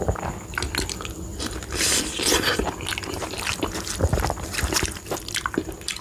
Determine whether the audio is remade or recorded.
recorded